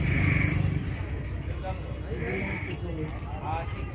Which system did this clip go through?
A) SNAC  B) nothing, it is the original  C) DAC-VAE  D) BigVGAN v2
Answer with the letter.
B